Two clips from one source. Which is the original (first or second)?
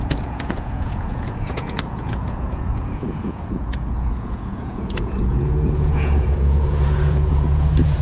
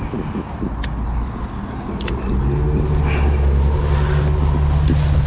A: second